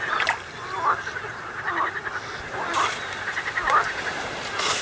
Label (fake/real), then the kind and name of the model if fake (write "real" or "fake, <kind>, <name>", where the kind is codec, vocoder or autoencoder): real